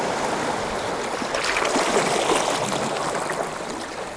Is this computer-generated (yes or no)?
no